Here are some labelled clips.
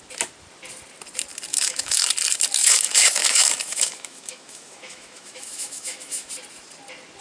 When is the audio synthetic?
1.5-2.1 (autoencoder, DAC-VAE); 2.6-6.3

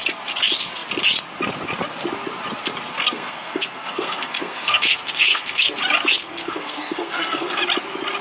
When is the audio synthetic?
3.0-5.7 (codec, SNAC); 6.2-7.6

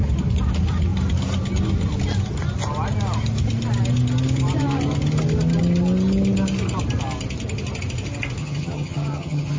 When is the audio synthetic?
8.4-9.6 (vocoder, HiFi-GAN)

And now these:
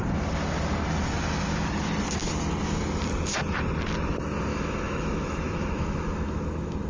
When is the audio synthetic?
4.5-6.9 (autoencoder, DAC-VAE)

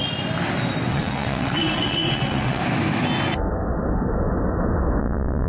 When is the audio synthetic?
0.9-2.6 (vocoder, WaveNeXt); 5.0-5.5

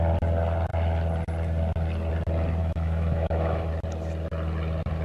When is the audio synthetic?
2.6-3.7 (autoencoder, DAC-VAE)

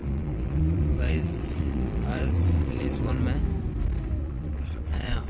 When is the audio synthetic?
0.0-3.2 (vocoder, Vocos); 4.2-5.3